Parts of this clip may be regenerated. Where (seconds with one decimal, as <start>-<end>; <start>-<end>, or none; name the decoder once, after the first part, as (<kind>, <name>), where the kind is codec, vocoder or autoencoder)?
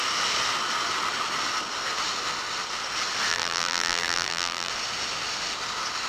3.3-4.7 (vocoder, BigVGAN v2)